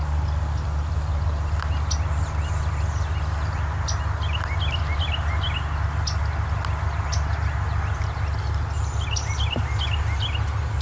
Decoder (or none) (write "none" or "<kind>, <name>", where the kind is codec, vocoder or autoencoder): none